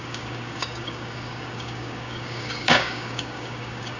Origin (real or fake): fake